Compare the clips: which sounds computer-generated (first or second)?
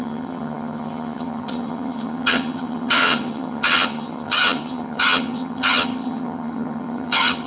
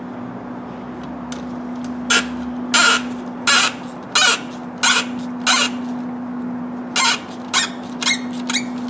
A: first